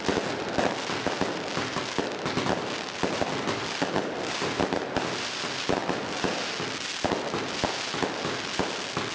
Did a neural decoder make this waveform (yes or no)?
no